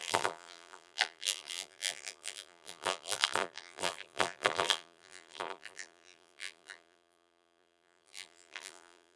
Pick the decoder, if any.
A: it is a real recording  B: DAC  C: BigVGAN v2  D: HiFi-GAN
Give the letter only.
C